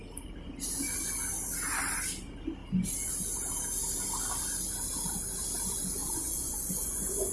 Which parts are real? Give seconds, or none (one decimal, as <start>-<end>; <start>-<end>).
0.0-6.0